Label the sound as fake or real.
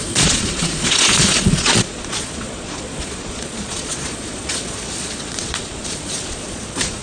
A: fake